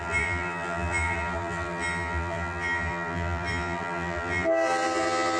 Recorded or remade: remade